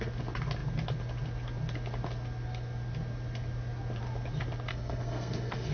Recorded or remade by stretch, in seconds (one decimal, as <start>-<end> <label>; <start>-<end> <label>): 0.0-4.7 recorded; 4.7-5.7 remade